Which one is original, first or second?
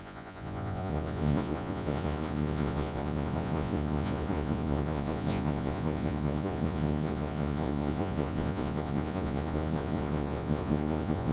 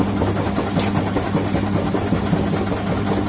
second